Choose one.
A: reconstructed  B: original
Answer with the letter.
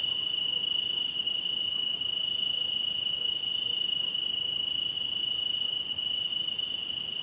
B